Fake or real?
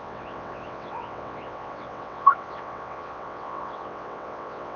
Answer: fake